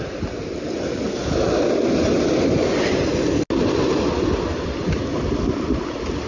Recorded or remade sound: recorded